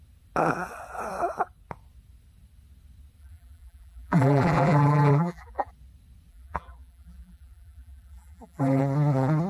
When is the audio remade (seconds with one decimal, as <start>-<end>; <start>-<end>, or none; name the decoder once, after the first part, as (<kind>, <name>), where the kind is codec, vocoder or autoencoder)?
3.2-5.7 (vocoder, BigVGAN v2); 6.3-8.8